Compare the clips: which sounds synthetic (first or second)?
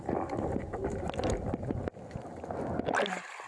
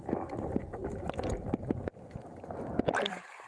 second